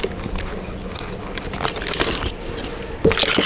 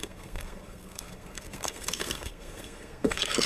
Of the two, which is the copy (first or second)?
second